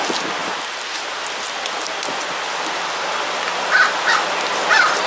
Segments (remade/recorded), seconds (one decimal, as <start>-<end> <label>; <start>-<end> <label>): 0.0-5.1 recorded